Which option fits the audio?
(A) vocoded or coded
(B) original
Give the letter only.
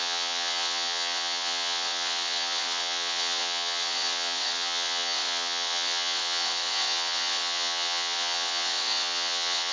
A